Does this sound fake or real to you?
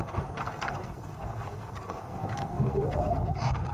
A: fake